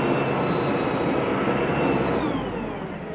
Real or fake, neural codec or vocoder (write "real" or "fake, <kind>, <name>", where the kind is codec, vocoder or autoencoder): real